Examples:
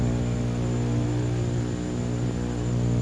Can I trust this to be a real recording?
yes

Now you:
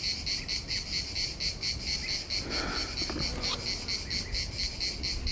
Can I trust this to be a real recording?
yes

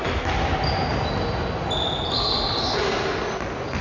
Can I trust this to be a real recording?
yes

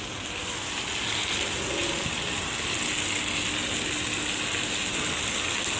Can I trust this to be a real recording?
yes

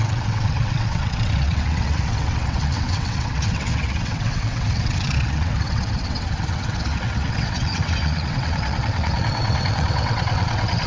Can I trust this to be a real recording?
no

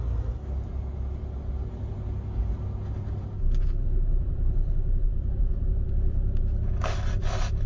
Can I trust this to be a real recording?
yes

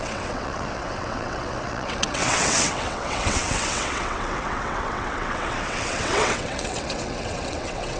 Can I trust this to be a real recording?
no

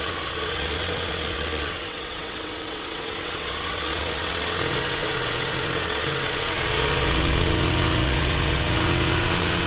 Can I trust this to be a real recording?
no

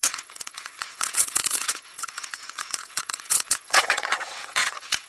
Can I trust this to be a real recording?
no